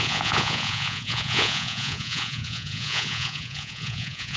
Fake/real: fake